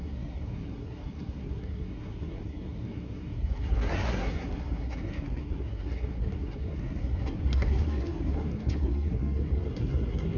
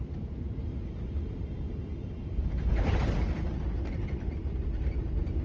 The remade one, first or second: first